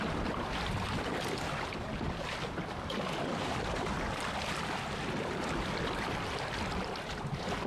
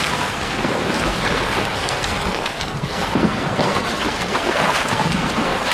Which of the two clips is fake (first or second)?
second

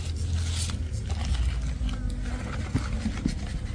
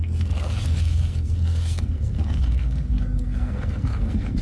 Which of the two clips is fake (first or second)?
second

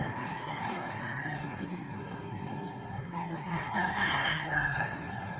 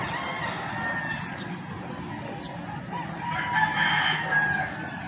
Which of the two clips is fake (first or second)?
first